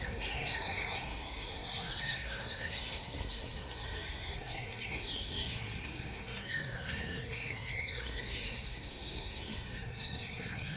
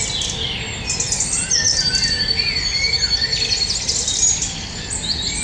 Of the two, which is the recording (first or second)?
second